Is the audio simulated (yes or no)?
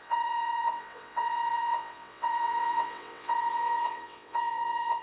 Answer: yes